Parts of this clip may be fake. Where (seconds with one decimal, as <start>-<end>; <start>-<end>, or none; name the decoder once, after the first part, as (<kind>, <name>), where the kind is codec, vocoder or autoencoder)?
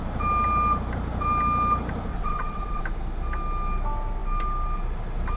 2.1-2.8 (vocoder, WaveNeXt)